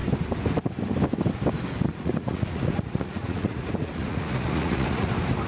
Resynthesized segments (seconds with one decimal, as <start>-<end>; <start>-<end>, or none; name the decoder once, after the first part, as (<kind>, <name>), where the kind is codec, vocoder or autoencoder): 1.9-5.1 (vocoder, Vocos)